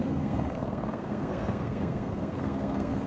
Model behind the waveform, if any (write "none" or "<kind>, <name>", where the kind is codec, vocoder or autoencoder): codec, SNAC